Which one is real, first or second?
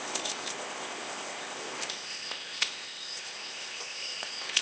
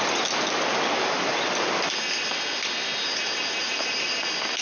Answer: second